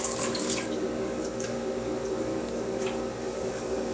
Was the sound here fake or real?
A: fake